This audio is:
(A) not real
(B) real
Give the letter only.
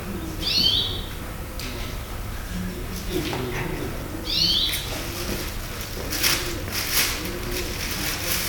B